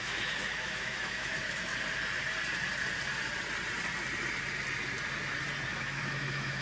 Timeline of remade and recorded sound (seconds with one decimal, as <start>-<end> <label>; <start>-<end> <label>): 0.0-1.7 remade; 1.7-5.7 recorded; 5.7-6.6 remade